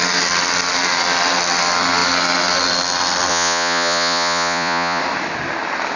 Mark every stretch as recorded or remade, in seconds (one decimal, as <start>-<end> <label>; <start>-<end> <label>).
0.0-3.3 recorded; 3.3-5.0 remade; 5.0-6.0 recorded

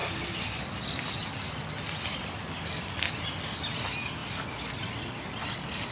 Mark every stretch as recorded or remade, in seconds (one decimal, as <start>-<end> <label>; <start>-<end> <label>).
0.0-5.9 recorded

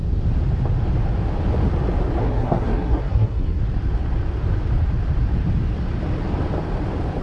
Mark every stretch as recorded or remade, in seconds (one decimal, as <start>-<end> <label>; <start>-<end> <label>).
0.0-2.2 recorded; 2.2-3.6 remade; 3.6-7.2 recorded

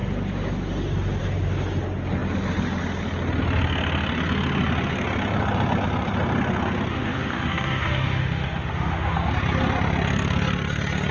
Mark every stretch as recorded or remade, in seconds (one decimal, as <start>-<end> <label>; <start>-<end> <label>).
0.0-6.9 recorded; 6.9-9.3 remade; 9.3-11.1 recorded